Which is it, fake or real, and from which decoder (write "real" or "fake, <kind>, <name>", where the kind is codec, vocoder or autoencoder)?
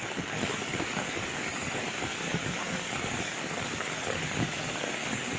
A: fake, codec, DAC